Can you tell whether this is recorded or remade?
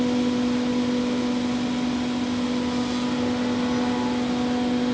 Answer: recorded